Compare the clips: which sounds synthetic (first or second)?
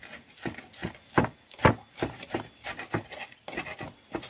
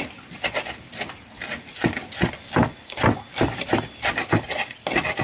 second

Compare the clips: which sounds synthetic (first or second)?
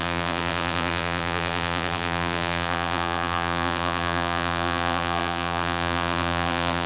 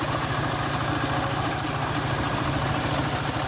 first